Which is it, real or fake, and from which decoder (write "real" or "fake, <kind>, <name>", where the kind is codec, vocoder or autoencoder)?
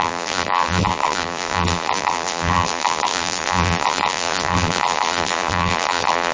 fake, vocoder, BigVGAN v2